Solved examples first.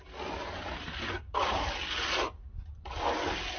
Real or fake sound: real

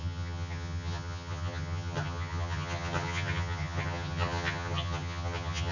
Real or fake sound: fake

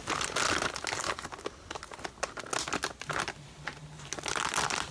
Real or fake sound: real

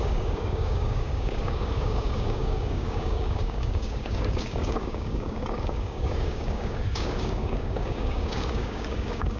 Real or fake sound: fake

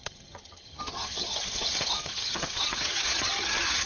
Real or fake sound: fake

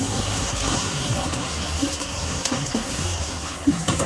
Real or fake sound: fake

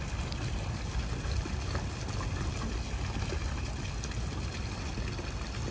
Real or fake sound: real